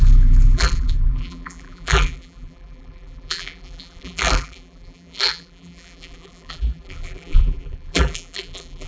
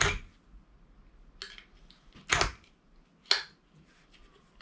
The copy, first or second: first